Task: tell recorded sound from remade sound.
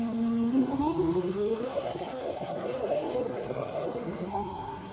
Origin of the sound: remade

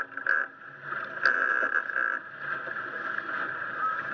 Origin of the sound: recorded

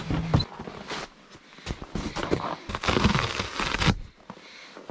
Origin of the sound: recorded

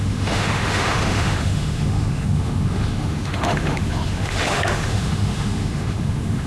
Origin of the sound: remade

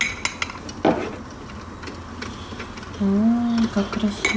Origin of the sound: recorded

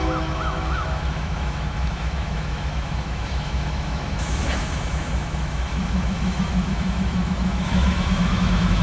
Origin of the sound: remade